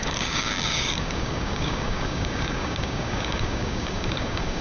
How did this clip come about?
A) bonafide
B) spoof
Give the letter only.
B